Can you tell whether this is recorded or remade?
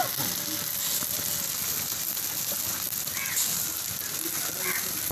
recorded